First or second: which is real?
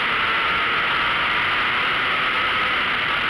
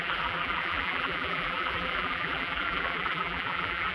first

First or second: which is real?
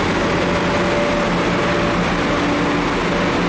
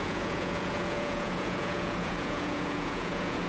first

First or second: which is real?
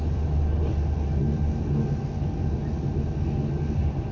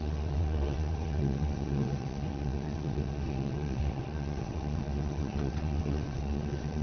first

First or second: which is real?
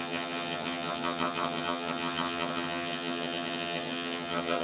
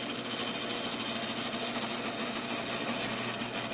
second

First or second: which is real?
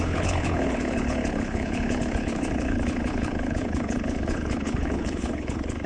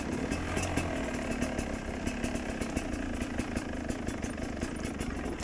second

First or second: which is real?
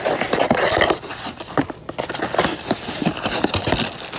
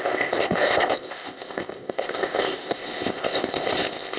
first